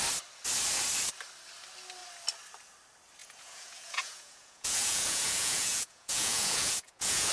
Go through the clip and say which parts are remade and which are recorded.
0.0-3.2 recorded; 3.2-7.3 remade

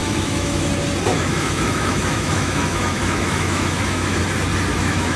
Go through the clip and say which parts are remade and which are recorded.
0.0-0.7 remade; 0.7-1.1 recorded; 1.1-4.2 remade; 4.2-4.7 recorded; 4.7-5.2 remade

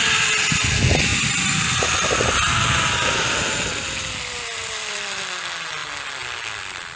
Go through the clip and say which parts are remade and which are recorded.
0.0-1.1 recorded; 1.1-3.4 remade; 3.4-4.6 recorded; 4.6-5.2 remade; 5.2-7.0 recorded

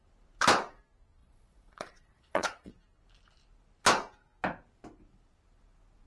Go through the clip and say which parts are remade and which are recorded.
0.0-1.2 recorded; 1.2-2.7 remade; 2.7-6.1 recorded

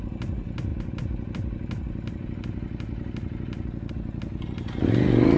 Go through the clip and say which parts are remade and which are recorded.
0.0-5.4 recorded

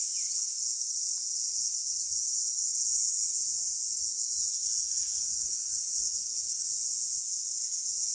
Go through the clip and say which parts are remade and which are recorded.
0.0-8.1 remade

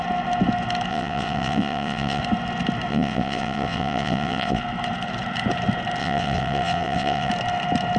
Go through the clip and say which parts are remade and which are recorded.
0.0-0.9 recorded; 0.9-2.2 remade; 2.2-2.9 recorded; 2.9-4.6 remade; 4.6-6.0 recorded; 6.0-7.3 remade; 7.3-8.0 recorded

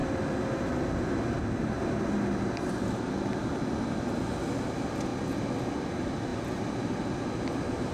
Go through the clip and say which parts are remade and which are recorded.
0.0-7.9 recorded